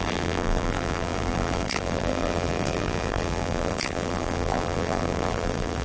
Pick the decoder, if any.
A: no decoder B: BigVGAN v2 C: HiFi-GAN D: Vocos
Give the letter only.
B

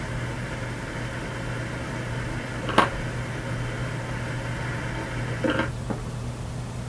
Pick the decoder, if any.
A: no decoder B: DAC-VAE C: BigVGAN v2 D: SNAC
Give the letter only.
A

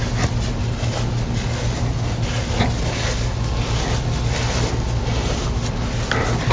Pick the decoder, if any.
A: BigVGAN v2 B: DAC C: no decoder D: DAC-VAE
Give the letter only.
C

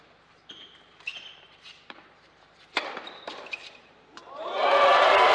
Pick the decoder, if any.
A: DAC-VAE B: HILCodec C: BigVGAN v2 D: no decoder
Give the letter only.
C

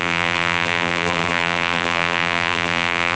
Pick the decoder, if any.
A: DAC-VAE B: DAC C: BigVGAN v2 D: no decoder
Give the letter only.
C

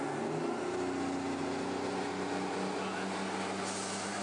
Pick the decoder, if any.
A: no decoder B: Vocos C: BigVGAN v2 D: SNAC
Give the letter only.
A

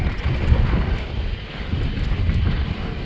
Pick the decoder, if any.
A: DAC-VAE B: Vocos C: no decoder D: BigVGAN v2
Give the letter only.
C